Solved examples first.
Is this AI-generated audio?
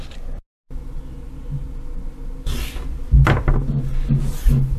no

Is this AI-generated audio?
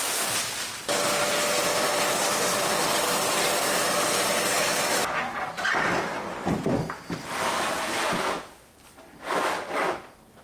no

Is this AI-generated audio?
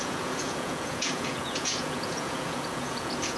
yes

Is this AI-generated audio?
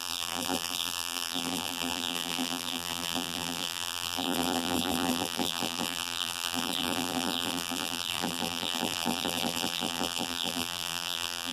yes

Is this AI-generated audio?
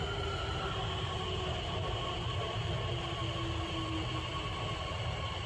no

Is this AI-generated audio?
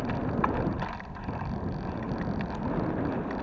no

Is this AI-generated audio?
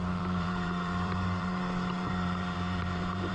yes